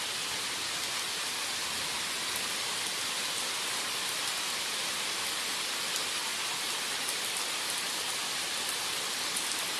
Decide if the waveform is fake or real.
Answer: real